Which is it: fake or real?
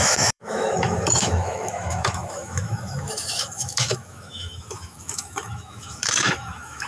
fake